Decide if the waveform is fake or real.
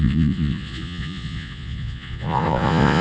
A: fake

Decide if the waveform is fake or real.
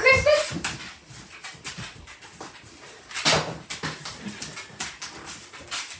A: real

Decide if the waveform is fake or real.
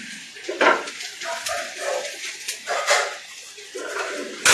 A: real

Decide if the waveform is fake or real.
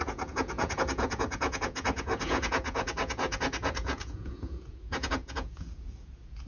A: fake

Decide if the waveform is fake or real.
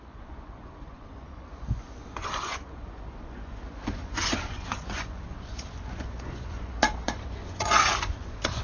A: fake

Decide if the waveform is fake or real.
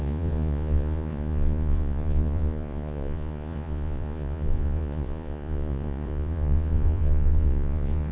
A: fake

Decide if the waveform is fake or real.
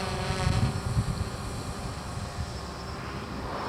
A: real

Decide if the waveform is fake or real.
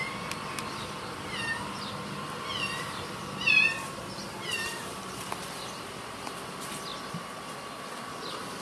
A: real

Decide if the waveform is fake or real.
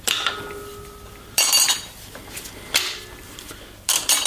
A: real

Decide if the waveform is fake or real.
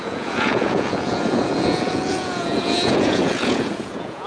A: fake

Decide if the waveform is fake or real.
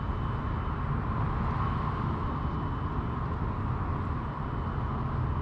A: real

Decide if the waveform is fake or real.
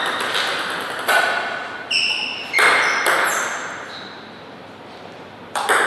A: real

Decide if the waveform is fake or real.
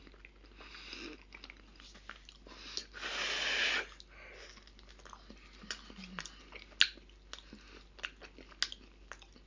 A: real